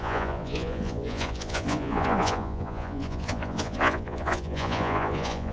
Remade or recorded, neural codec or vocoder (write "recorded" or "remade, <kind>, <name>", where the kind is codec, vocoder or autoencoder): remade, vocoder, Vocos